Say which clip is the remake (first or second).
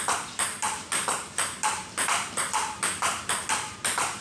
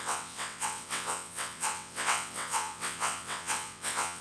second